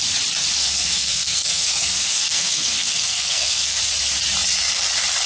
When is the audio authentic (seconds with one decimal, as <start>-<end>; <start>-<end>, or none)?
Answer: 0.0-0.6; 3.8-5.3